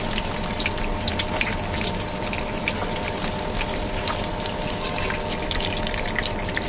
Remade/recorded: recorded